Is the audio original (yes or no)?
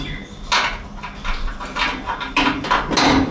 yes